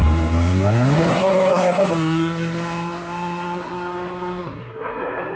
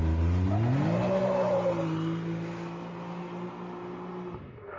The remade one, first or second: first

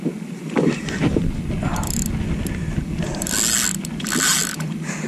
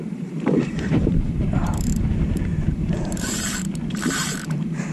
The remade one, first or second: second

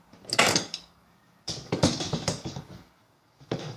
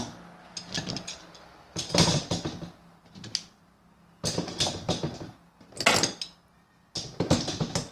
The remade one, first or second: first